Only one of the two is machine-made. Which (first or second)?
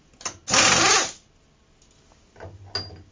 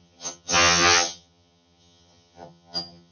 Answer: second